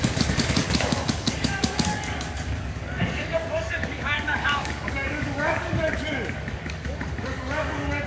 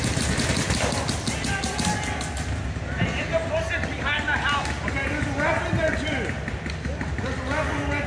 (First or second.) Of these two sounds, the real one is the second